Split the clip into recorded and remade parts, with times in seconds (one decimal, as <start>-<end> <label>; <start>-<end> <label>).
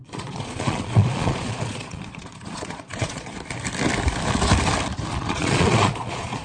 0.0-3.3 remade; 3.3-5.1 recorded; 5.1-6.4 remade